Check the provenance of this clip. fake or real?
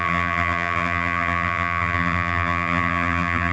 fake